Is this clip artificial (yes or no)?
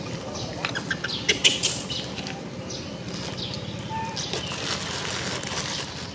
no